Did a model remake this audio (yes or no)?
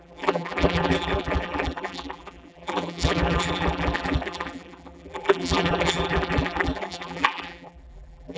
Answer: yes